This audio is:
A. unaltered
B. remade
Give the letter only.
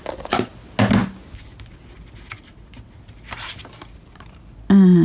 A